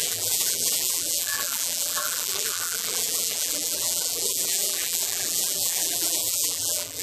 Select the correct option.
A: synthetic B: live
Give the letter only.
A